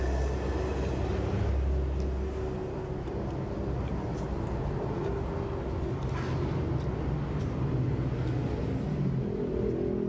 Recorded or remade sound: recorded